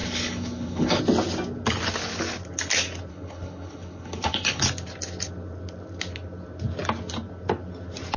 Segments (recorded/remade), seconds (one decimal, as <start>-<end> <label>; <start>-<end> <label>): 0.0-1.0 remade; 1.0-3.1 recorded; 3.1-4.6 remade; 4.6-8.2 recorded